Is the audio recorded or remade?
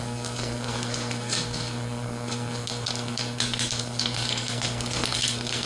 remade